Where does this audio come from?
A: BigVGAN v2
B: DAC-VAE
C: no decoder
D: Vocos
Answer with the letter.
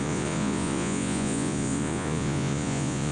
D